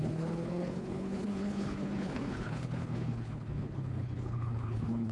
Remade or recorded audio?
remade